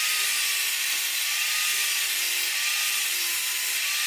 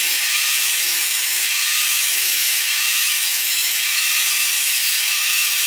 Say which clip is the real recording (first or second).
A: first